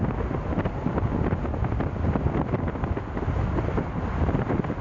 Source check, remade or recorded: recorded